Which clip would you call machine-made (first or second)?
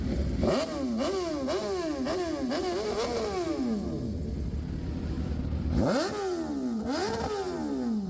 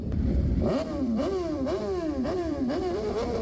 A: second